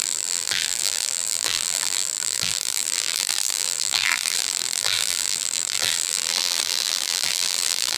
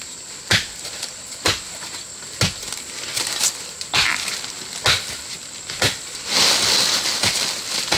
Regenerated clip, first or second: first